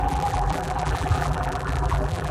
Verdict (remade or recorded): remade